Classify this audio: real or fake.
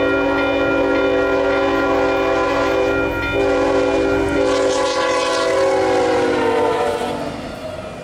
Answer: real